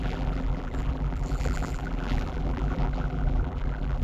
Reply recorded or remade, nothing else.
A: remade